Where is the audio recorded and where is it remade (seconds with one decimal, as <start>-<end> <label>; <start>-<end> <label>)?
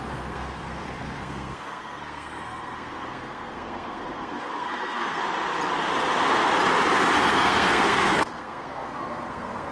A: 0.0-5.2 remade; 5.2-7.3 recorded; 7.3-9.7 remade